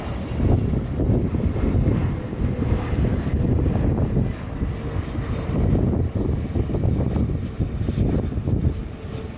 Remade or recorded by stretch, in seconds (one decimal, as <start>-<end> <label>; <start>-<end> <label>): 0.0-9.4 recorded